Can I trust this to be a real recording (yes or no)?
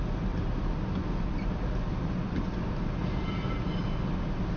yes